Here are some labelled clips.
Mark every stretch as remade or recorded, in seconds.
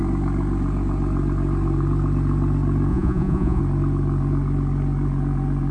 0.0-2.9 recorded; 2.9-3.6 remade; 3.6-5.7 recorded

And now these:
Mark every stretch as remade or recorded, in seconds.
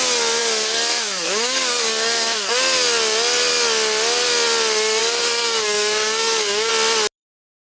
0.0-0.4 recorded; 0.4-2.5 remade; 2.5-5.0 recorded; 5.0-6.7 remade; 6.7-7.6 recorded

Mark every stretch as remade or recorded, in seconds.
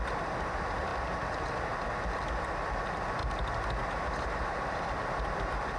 0.0-3.2 recorded; 3.2-5.2 remade; 5.2-5.8 recorded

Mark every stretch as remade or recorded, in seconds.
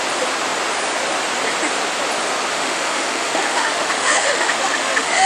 0.0-2.5 recorded; 2.5-5.3 remade